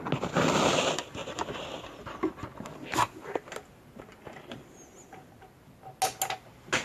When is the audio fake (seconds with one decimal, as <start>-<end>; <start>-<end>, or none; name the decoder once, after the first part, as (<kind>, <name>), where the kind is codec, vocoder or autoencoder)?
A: none